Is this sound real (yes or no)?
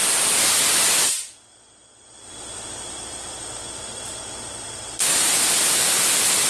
yes